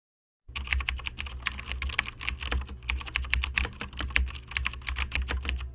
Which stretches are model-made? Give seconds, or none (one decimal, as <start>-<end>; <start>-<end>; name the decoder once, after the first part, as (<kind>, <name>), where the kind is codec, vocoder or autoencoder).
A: none